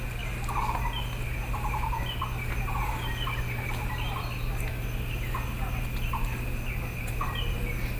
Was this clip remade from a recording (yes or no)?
no